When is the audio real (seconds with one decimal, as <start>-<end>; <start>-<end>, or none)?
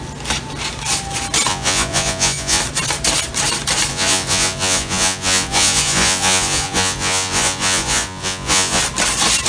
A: 0.0-1.5; 2.6-3.9; 8.8-9.5